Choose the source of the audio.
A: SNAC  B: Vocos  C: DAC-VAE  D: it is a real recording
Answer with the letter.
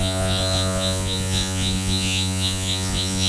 B